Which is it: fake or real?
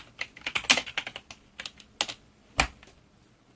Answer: real